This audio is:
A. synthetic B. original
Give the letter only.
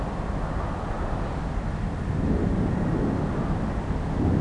B